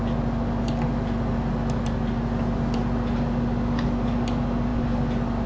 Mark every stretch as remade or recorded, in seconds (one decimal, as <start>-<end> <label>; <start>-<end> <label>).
0.0-5.5 recorded